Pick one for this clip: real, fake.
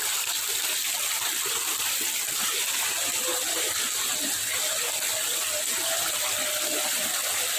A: real